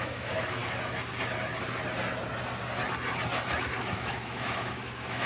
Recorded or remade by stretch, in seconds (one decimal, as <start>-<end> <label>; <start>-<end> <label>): 0.0-0.6 remade; 0.6-3.8 recorded; 3.8-5.3 remade